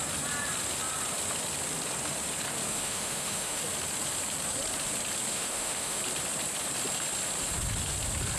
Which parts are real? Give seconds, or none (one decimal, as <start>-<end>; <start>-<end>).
0.0-2.7; 3.6-5.3; 6.0-8.4